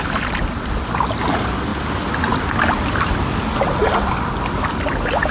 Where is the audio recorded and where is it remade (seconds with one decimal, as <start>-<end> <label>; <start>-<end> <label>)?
0.0-5.3 recorded